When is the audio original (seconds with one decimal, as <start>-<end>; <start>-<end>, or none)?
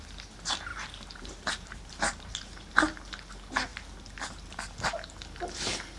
0.0-0.7; 2.3-6.0